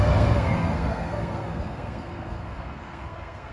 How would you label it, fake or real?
fake